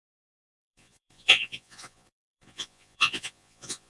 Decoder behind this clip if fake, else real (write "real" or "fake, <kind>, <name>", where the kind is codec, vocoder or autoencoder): fake, vocoder, Vocos